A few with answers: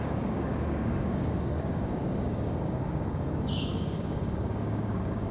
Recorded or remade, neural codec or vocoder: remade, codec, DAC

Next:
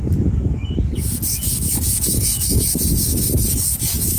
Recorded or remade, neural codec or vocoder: remade, codec, DAC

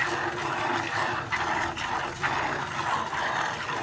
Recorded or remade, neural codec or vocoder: recorded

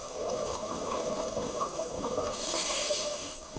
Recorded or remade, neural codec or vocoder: remade, codec, DAC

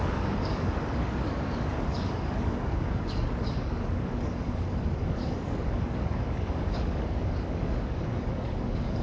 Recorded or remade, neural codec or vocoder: remade, codec, DAC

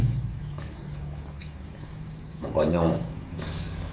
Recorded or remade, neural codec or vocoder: remade, codec, DAC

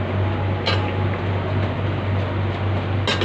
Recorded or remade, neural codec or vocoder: recorded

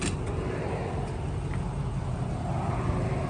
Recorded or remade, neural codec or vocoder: recorded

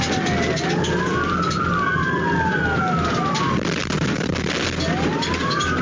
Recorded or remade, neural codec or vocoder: recorded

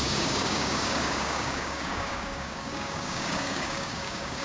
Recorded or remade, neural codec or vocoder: remade, codec, DAC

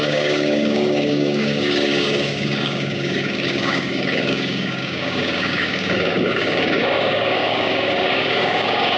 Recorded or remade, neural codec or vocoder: remade, codec, DAC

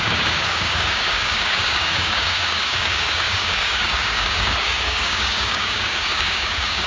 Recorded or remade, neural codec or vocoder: remade, codec, DAC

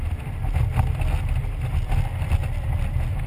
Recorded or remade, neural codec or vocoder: recorded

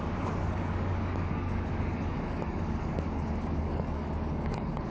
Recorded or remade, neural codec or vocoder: remade, codec, DAC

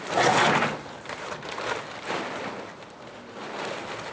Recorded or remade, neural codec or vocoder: recorded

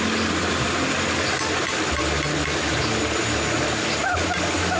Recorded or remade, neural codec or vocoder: recorded